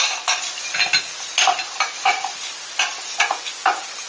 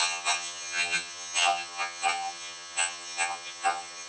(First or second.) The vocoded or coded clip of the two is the second